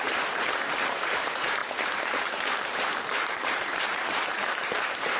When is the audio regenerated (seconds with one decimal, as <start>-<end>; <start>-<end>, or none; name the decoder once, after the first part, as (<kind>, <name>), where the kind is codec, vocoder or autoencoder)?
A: 0.0-5.2 (vocoder, BigVGAN v2)

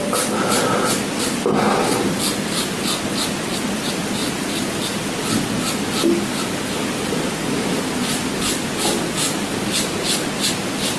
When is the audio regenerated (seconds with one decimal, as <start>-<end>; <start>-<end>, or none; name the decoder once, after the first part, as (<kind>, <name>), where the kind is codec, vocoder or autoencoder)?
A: none

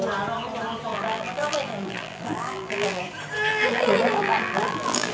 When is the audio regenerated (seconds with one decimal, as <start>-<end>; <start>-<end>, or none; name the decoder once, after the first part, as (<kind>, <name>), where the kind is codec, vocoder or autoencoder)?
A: 0.9-3.0 (vocoder, BigVGAN v2); 3.5-5.1